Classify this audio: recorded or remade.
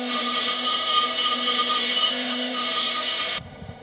remade